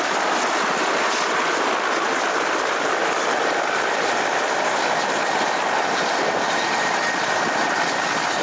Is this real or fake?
fake